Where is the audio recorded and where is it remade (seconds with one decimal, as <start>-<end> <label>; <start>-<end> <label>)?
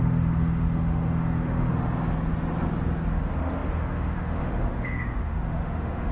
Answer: 0.0-1.7 remade; 1.7-3.1 recorded; 3.1-6.1 remade